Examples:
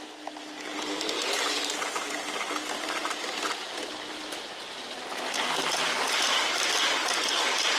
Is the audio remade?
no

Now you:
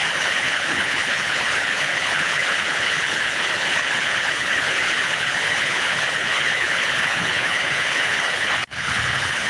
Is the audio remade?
yes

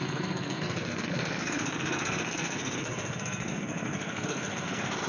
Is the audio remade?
yes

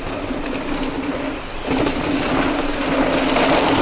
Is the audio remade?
no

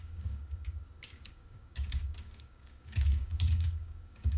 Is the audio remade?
yes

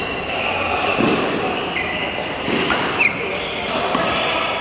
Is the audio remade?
no